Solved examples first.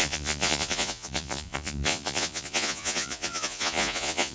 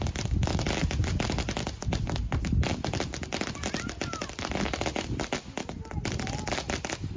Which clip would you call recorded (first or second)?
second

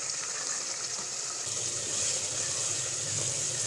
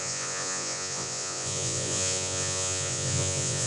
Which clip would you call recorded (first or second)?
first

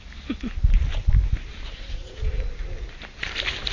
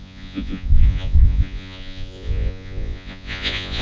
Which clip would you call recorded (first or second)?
first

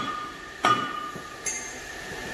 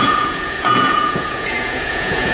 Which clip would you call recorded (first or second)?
first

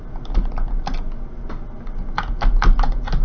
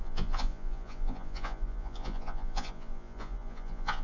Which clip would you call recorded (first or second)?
first